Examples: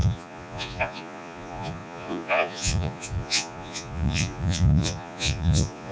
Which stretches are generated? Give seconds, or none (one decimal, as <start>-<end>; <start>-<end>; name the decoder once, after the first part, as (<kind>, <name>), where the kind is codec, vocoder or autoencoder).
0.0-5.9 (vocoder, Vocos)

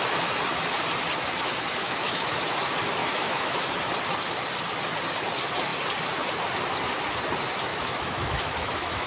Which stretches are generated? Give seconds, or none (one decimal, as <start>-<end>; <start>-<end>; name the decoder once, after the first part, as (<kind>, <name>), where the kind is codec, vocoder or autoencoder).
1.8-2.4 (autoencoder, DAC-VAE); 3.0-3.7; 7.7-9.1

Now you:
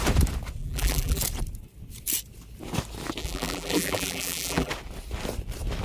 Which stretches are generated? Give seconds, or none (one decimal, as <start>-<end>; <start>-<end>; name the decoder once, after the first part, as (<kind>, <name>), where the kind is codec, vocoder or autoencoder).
0.6-1.2 (vocoder, BigVGAN v2); 3.2-4.7

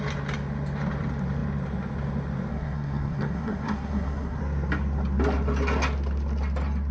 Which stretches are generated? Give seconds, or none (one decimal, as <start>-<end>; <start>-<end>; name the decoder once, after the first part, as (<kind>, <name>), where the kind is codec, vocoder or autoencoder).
2.5-4.4 (codec, SNAC)

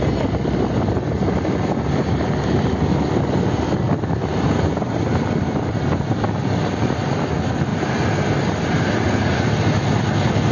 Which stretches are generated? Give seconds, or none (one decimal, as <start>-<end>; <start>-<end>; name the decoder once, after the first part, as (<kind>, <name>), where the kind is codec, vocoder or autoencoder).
none

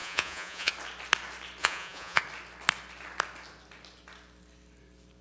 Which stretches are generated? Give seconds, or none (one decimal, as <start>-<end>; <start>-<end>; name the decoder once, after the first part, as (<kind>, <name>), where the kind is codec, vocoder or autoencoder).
0.0-0.7 (vocoder, Vocos); 1.6-2.2

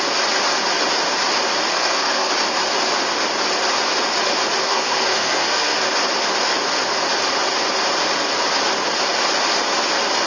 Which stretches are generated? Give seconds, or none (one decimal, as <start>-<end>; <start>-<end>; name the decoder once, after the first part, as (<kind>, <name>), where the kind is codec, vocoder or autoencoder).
1.7-2.3 (codec, SNAC); 4.6-5.8

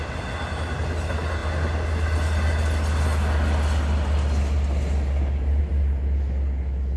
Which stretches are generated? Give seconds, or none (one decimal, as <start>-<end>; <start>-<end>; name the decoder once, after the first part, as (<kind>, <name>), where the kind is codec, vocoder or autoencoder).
none